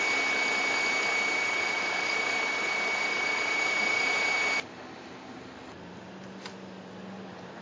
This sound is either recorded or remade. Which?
recorded